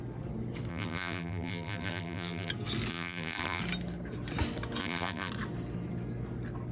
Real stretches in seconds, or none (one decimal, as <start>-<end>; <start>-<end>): 0.0-0.7; 2.5-2.9; 3.6-4.8; 5.3-6.7